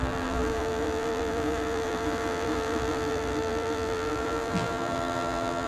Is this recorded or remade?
remade